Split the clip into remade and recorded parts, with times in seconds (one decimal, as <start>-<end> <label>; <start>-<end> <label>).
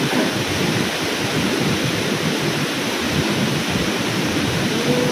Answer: 0.0-0.9 recorded; 0.9-4.0 remade; 4.0-5.1 recorded